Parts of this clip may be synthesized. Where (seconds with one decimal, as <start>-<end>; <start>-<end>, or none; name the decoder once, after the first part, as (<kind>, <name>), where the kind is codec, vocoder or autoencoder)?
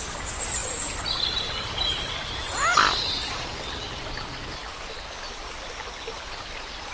0.6-2.1 (vocoder, BigVGAN v2)